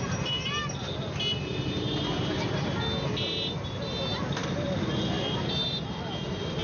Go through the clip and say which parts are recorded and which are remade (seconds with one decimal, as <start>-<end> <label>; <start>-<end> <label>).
0.0-1.5 recorded; 1.5-2.6 remade; 2.6-6.6 recorded